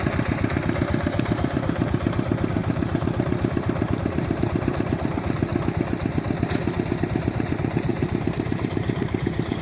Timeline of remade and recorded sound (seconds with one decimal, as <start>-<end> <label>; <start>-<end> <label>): 0.0-5.5 remade; 5.5-7.0 recorded; 7.0-9.6 remade